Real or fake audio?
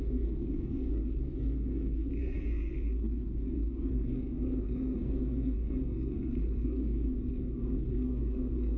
fake